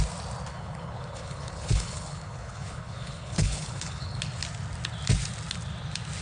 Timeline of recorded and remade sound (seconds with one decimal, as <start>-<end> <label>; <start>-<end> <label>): 0.0-0.5 recorded; 0.5-4.2 remade; 4.2-6.2 recorded